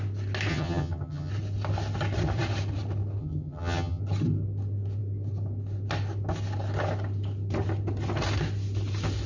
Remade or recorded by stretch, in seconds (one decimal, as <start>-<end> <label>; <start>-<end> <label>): 0.0-0.5 recorded; 0.5-1.3 remade; 1.3-3.2 recorded; 3.2-4.0 remade; 4.0-9.3 recorded